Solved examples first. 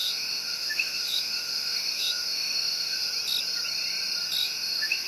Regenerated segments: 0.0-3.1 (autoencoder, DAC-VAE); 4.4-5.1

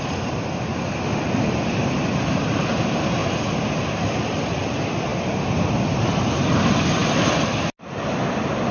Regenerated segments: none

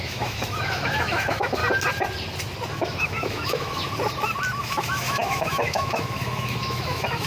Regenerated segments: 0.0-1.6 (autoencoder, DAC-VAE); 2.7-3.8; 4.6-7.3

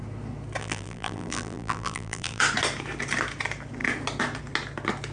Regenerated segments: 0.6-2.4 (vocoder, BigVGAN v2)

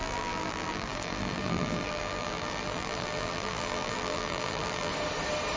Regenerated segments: 0.0-4.9 (vocoder, BigVGAN v2)

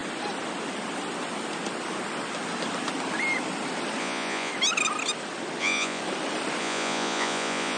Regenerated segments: 4.0-4.5 (vocoder, Vocos); 5.6-6.0; 6.6-7.8